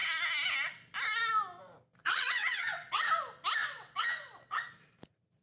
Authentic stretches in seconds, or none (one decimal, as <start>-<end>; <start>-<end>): 0.0-2.0; 3.1-3.6; 4.7-5.4